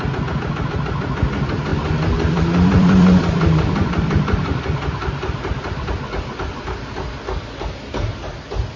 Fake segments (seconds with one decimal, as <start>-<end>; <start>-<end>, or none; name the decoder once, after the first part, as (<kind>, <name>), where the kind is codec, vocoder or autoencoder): 1.7-5.6 (vocoder, BigVGAN v2)